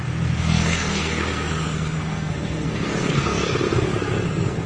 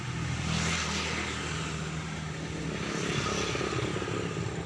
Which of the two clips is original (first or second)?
second